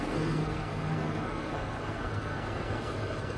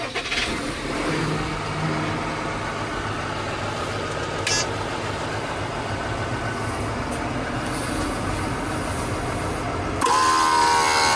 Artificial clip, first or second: first